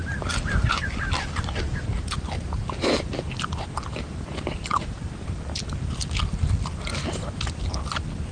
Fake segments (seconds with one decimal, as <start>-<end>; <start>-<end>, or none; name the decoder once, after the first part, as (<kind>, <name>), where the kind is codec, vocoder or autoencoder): none